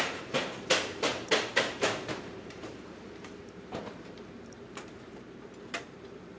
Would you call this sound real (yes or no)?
no